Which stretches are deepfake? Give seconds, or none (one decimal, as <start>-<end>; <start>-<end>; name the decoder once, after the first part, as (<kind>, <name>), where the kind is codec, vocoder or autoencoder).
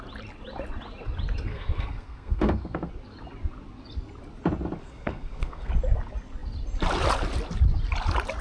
1.5-2.9 (codec, SNAC); 4.8-5.7